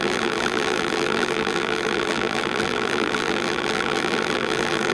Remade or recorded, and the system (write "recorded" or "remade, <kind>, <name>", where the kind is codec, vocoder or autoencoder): remade, vocoder, BigVGAN v2